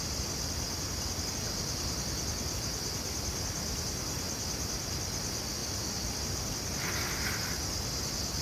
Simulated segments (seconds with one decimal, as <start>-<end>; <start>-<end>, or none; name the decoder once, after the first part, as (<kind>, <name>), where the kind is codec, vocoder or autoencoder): none